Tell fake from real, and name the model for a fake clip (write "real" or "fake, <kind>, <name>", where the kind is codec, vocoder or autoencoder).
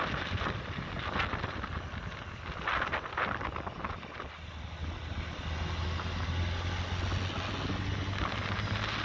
real